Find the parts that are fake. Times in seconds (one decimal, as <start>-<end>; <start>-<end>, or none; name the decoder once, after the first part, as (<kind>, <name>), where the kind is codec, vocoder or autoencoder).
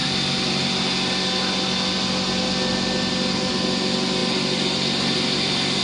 none